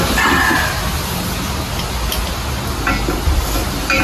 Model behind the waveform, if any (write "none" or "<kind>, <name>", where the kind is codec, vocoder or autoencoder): none